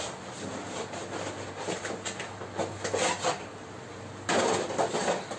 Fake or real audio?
real